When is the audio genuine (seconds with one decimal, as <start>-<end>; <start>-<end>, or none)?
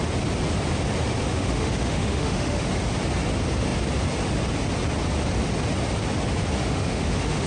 0.0-1.2; 2.7-6.6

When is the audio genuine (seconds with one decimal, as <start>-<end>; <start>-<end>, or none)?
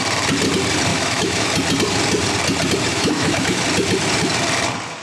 0.0-0.9; 1.5-2.9; 3.6-5.0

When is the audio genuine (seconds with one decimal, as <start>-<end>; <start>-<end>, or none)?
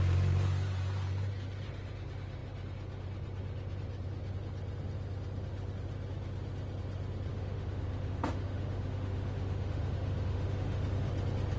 0.0-7.3; 11.1-11.6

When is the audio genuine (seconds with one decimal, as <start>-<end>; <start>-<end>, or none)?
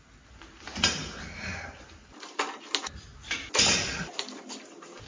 0.0-5.1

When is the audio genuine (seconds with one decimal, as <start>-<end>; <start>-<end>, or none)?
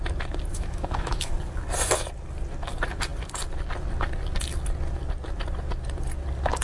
0.0-0.5; 1.3-6.6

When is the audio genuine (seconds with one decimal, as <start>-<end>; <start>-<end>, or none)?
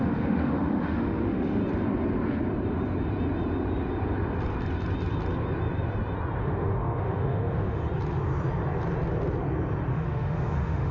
1.6-6.4; 7.8-9.9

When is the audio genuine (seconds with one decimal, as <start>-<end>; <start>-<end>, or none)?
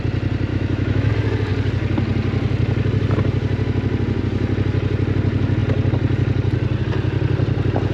0.0-0.5; 1.1-7.9